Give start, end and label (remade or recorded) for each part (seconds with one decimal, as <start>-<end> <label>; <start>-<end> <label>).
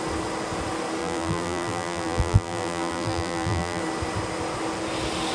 0.0-1.0 recorded; 1.0-3.8 remade; 3.8-5.3 recorded